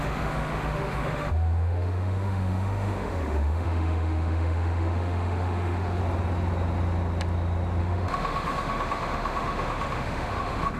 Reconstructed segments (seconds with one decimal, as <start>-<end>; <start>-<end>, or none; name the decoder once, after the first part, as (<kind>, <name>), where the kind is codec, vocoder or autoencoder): 0.0-6.0 (autoencoder, DAC-VAE); 7.8-10.8